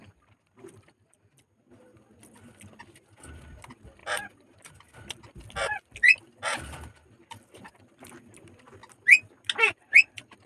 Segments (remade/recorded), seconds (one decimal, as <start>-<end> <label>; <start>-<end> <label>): 0.0-10.5 recorded